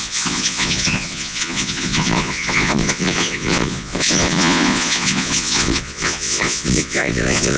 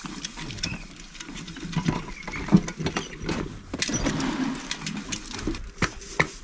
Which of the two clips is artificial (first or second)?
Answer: first